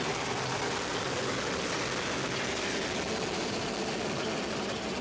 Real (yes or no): yes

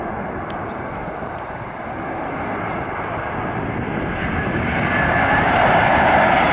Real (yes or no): yes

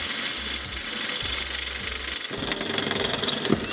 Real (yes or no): yes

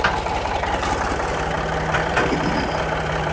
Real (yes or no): yes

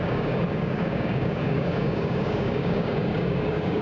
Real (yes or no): no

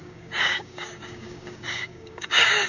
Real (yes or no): no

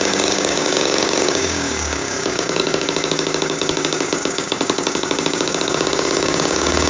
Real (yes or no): no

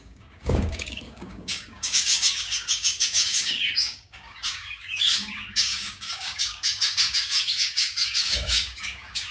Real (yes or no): no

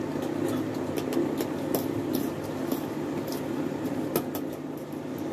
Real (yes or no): yes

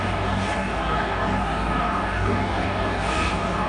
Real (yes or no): no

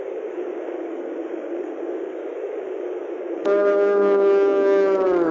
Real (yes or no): no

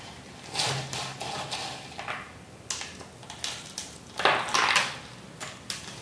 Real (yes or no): yes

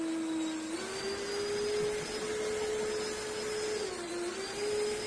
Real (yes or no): yes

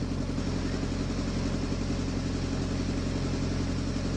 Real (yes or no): yes